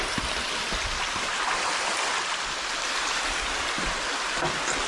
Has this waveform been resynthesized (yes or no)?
no